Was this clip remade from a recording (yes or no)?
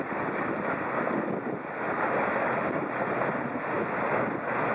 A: no